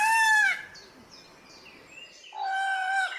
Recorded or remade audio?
remade